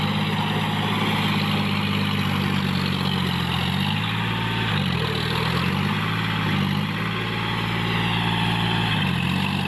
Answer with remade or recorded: recorded